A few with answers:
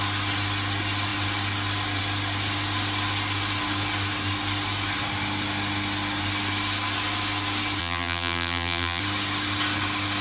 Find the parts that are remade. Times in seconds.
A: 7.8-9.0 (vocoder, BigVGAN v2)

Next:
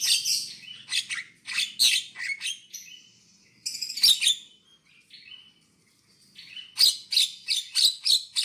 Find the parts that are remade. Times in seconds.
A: none

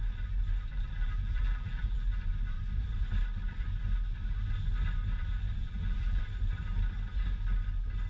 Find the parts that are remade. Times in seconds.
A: 0.7-2.2 (vocoder, BigVGAN v2); 5.6-6.2

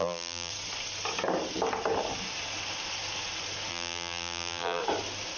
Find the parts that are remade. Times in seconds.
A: 0.0-0.5 (vocoder, BigVGAN v2); 3.7-4.8

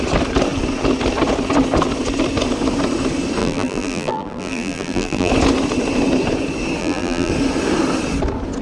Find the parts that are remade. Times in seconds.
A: 3.4-5.3 (vocoder, BigVGAN v2); 6.8-7.3

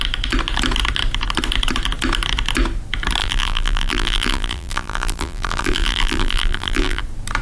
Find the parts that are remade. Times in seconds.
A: 3.2-7.0 (vocoder, BigVGAN v2)

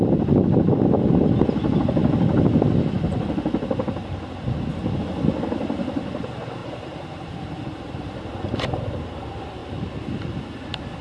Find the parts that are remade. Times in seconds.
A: 6.6-8.0 (vocoder, BigVGAN v2)

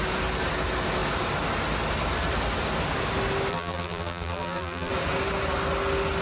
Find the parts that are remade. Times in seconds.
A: 3.5-4.9 (vocoder, BigVGAN v2)